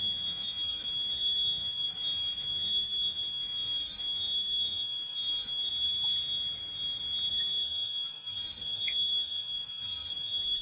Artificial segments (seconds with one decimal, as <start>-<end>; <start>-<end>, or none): 0.0-5.7; 7.3-10.6